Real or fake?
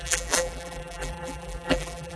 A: fake